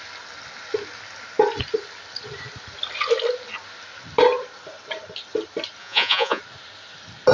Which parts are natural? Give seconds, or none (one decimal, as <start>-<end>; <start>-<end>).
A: 0.0-5.8; 6.4-7.3